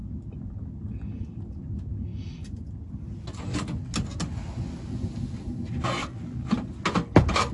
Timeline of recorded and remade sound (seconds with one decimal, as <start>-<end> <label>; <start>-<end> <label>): 0.0-7.5 recorded